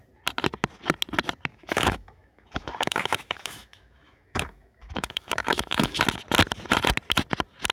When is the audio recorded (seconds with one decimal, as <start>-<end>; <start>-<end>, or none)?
0.0-1.5; 6.0-7.7